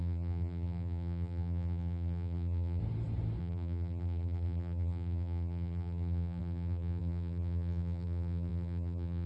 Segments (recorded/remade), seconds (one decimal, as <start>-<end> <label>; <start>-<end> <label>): 0.0-2.8 remade; 2.8-3.4 recorded; 3.4-9.3 remade